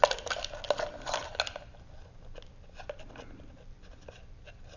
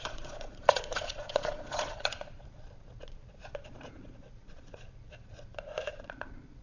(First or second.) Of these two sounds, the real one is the first